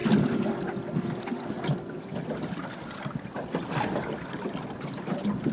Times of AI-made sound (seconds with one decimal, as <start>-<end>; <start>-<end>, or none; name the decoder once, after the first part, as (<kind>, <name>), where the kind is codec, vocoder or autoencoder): none